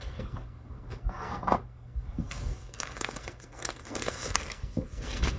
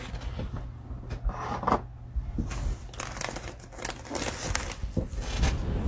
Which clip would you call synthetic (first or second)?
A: first